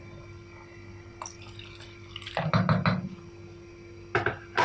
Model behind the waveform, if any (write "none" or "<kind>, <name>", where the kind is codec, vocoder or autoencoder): none